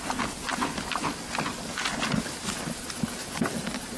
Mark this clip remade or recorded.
recorded